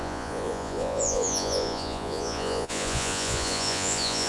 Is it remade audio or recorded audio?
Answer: remade